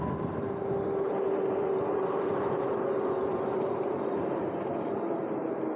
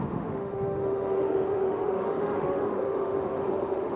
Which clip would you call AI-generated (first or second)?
second